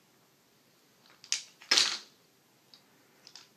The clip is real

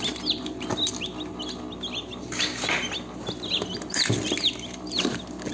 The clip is real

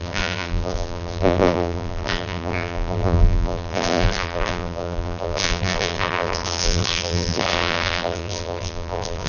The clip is fake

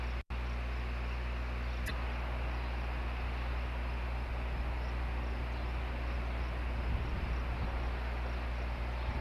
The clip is real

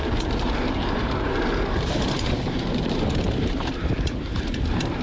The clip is fake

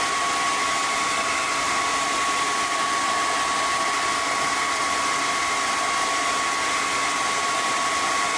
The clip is real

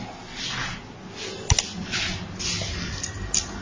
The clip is real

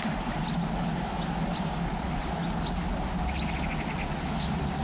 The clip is real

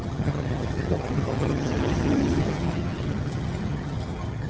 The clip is fake